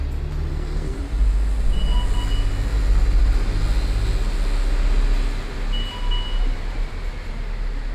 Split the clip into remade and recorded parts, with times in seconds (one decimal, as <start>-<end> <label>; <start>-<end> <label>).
0.0-0.5 recorded; 0.5-1.0 remade; 1.0-7.9 recorded